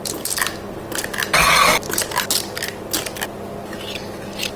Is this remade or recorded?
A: recorded